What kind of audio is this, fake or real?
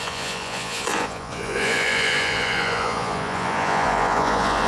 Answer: fake